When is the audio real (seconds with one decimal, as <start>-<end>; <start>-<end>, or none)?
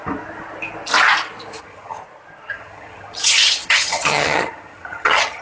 0.0-1.6; 2.0-2.5